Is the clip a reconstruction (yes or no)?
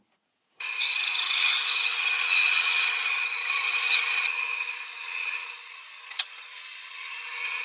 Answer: yes